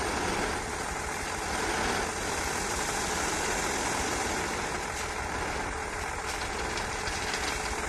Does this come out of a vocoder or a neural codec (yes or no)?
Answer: no